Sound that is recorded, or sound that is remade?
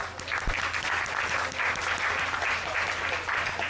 recorded